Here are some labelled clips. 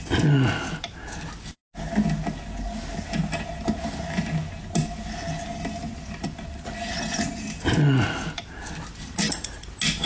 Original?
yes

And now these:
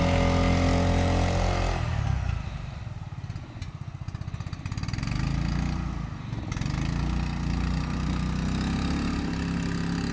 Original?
yes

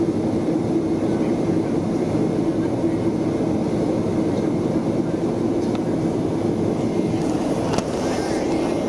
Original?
yes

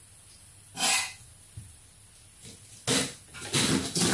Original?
yes